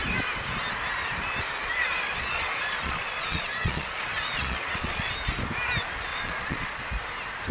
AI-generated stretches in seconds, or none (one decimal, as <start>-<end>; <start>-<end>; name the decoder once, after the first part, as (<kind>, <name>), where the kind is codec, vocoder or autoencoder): 1.6-5.1 (vocoder, Vocos); 6.1-6.8